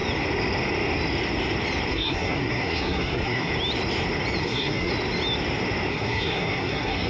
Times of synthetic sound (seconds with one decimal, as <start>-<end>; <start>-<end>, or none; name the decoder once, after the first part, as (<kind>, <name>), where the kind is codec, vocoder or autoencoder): 1.9-3.5 (codec, SNAC); 4.4-4.9; 5.9-7.1